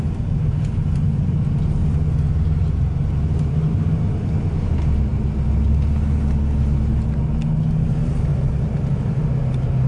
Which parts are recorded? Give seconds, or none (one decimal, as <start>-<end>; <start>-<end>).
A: 0.0-9.9